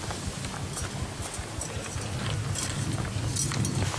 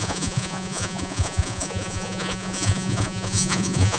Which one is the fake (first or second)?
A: second